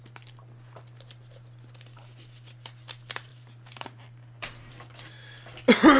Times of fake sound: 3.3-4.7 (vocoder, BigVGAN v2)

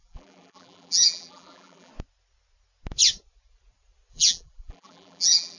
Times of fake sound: 0.0-1.9 (vocoder, BigVGAN v2); 4.1-5.6

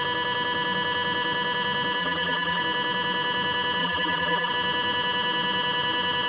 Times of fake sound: 2.0-2.6 (vocoder, BigVGAN v2); 3.8-4.5

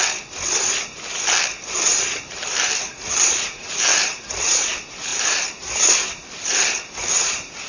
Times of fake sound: 1.9-2.7 (vocoder, BigVGAN v2); 3.9-4.6; 5.1-7.7

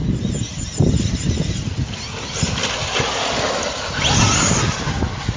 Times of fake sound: none

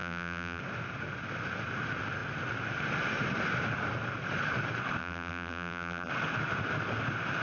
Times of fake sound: 0.0-0.6 (vocoder, BigVGAN v2); 5.0-6.1

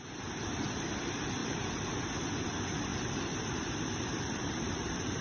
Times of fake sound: 1.4-2.0 (vocoder, BigVGAN v2); 2.9-5.2